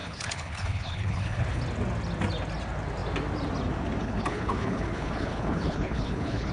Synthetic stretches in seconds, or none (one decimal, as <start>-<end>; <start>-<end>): 0.0-1.6; 4.0-6.5